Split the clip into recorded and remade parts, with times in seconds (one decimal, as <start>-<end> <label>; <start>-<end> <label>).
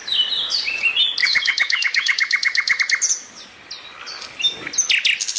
0.0-1.2 recorded; 1.2-2.8 remade; 2.8-5.4 recorded